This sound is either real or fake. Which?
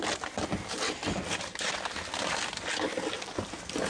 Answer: real